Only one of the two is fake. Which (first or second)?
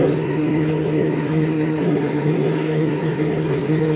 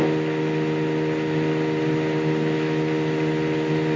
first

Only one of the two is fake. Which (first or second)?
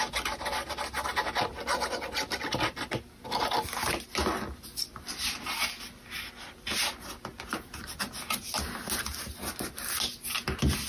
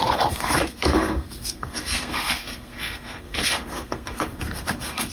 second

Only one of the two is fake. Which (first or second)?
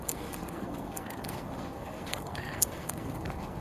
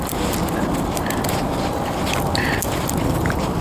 first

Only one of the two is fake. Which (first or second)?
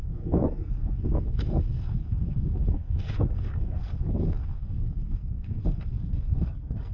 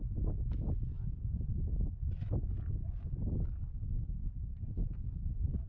first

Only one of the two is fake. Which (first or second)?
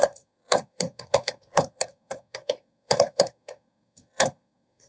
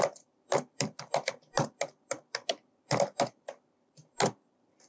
first